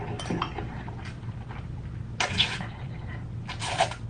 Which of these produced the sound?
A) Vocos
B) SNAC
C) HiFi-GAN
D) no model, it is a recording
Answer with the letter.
D